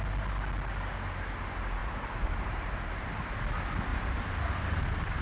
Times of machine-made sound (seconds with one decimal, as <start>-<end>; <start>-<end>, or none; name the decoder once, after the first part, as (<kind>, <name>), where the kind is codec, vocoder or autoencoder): 1.8-3.1 (vocoder, BigVGAN v2); 3.9-5.2